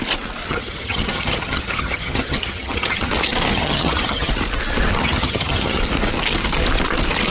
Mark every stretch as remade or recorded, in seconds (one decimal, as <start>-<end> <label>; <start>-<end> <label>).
0.0-0.5 recorded; 0.5-3.1 remade; 3.1-3.5 recorded; 3.5-4.3 remade; 4.3-5.0 recorded; 5.0-5.8 remade; 5.8-7.3 recorded